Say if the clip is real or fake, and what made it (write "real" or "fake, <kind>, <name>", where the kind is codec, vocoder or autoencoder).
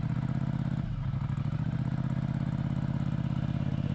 real